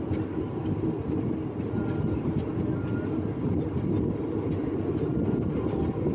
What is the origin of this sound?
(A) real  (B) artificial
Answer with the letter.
A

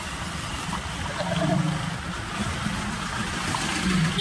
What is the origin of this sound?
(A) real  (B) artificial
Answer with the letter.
A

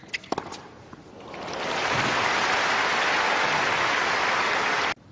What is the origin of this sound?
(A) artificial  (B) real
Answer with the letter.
B